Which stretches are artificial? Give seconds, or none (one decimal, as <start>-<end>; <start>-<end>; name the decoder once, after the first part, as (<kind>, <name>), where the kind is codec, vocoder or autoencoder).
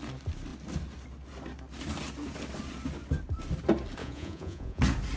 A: 4.0-4.8 (vocoder, Vocos)